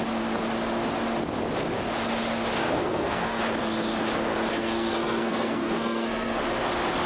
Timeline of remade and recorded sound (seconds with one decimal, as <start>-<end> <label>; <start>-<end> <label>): 0.0-2.6 recorded; 2.6-3.4 remade; 3.4-4.5 recorded; 4.5-6.4 remade; 6.4-7.1 recorded